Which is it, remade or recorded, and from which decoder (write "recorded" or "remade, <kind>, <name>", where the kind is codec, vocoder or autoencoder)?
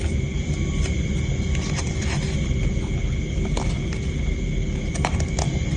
recorded